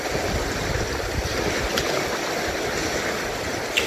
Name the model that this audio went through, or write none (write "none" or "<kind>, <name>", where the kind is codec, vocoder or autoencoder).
none